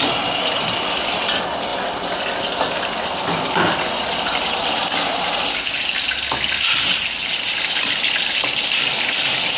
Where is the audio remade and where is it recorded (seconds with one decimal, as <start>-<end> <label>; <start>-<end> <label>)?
0.0-9.6 recorded